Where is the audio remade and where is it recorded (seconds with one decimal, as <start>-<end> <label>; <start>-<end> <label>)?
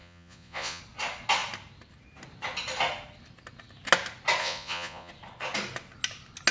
0.0-0.8 remade; 0.8-4.4 recorded; 4.4-5.1 remade; 5.1-6.5 recorded